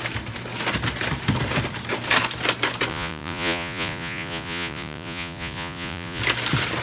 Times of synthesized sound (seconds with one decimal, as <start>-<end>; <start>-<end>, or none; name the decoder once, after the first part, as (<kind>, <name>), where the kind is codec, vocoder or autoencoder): 2.9-6.2 (vocoder, Vocos)